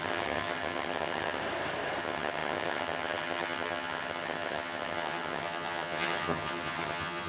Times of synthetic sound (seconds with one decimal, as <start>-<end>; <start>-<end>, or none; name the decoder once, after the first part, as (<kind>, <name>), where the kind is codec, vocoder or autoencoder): 0.0-1.4 (vocoder, HiFi-GAN); 2.0-7.3